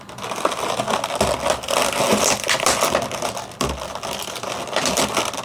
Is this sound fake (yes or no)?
no